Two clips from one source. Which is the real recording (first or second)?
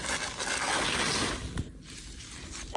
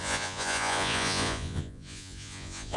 first